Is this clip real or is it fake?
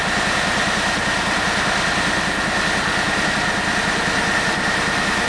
real